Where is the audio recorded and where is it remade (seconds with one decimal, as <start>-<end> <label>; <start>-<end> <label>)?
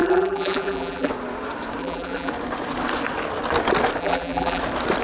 0.0-1.1 remade; 1.1-1.8 recorded; 1.8-2.3 remade; 2.3-4.0 recorded; 4.0-4.6 remade; 4.6-5.0 recorded